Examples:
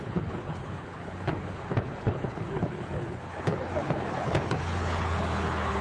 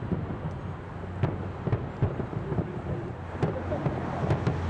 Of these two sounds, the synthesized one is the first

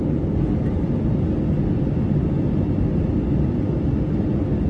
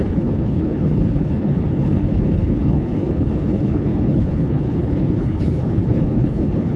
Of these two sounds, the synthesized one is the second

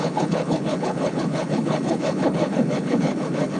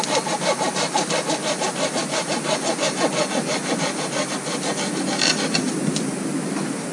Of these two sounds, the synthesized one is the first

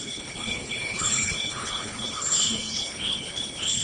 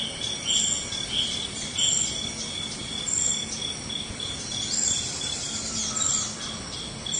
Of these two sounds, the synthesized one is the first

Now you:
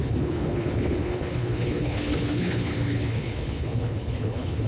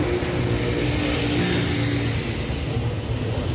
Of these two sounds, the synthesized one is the first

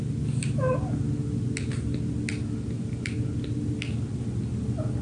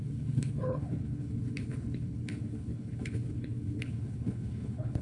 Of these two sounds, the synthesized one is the second